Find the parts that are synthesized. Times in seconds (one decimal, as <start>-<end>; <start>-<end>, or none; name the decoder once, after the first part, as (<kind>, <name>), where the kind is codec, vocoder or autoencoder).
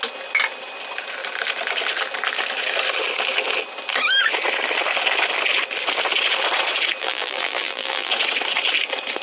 7.0-8.1 (vocoder, BigVGAN v2)